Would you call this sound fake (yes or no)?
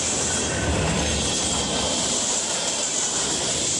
no